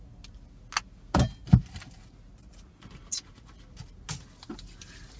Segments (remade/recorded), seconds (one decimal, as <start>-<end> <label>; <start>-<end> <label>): 0.0-5.2 recorded